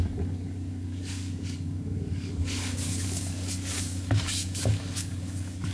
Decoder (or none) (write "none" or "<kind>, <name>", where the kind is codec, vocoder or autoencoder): codec, DAC